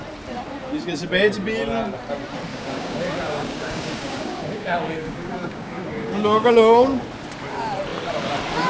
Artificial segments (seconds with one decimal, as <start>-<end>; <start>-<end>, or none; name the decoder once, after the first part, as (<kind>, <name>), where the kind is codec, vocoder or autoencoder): 2.5-7.0 (codec, DAC)